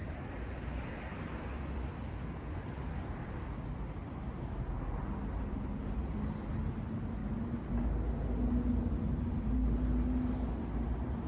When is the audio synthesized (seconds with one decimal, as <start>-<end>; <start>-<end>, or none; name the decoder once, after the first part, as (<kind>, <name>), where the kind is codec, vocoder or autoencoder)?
0.0-0.6 (vocoder, BigVGAN v2)